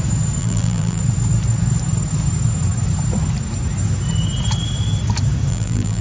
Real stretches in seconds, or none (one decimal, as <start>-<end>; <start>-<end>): 0.0-0.4; 1.0-5.5